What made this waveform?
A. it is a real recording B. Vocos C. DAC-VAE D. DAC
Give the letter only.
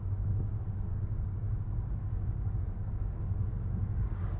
D